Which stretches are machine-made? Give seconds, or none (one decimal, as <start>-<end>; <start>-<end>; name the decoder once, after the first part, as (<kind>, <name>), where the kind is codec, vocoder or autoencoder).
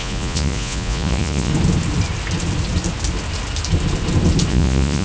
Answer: 0.0-1.5 (vocoder, Vocos); 4.5-5.0